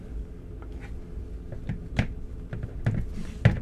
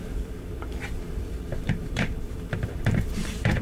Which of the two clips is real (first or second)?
first